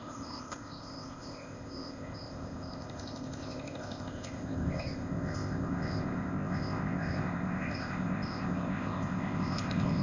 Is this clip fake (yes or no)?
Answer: yes